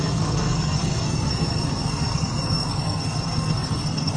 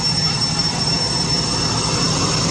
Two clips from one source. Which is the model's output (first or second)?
first